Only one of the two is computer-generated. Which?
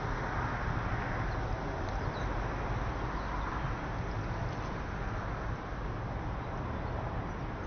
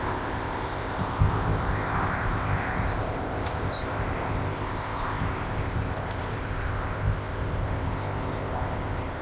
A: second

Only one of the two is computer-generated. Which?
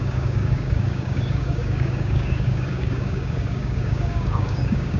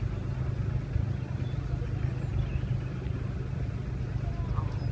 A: first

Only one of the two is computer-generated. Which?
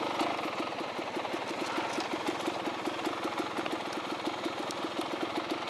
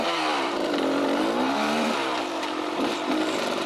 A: second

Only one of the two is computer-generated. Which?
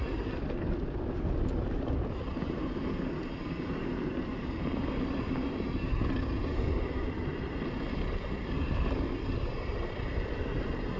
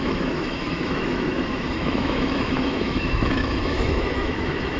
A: second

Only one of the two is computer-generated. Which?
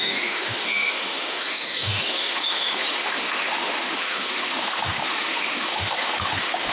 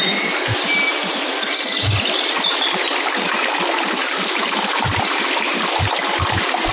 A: first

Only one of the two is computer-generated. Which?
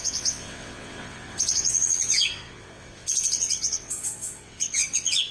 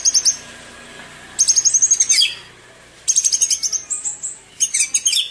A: first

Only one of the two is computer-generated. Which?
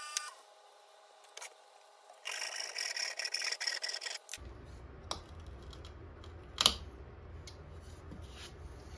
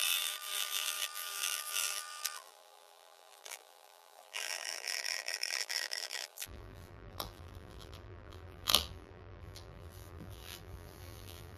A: second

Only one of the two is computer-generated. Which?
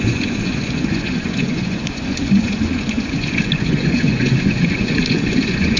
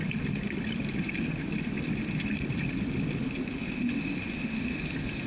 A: first